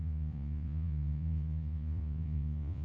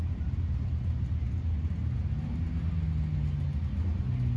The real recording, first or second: second